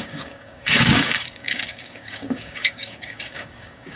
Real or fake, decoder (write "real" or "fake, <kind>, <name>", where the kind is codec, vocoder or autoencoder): fake, codec, DAC